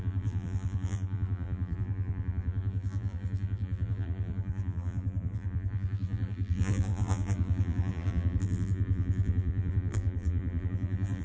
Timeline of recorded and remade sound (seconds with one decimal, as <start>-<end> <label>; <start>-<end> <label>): 0.0-11.2 remade